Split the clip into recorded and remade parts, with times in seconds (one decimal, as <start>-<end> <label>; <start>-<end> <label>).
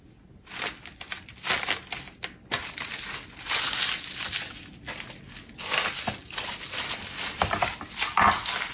0.0-8.7 recorded